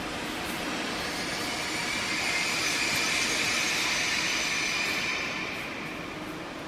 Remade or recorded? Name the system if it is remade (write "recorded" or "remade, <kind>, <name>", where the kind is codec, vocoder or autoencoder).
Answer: recorded